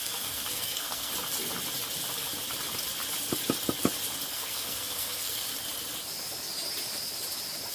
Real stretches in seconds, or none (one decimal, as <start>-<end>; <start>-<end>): 1.1-4.3; 5.5-7.7